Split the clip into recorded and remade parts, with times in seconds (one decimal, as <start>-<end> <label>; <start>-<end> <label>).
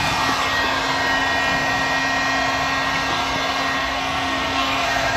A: 0.0-3.8 recorded; 3.8-5.2 remade